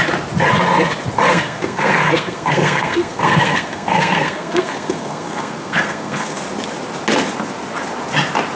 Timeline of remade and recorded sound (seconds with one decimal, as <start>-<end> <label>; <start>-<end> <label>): 0.0-1.3 recorded; 1.3-6.4 remade; 6.4-8.6 recorded